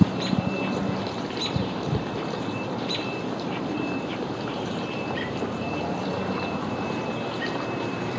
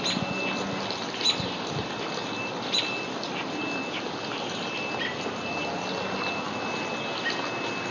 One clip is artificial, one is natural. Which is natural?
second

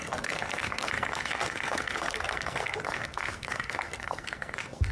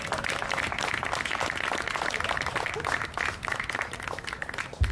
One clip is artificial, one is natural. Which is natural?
second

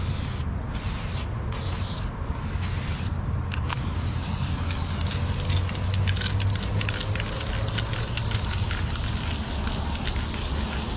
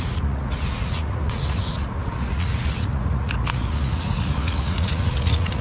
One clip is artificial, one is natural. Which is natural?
first